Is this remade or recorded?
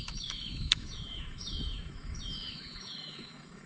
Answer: remade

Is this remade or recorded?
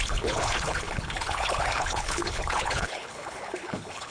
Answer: remade